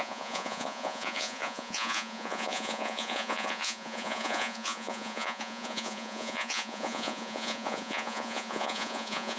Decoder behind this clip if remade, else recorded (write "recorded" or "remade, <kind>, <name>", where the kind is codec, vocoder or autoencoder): remade, vocoder, Vocos